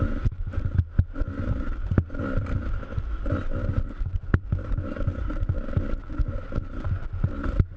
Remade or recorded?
recorded